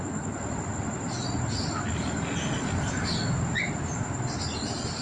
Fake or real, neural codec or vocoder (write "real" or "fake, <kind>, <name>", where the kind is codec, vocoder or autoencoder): real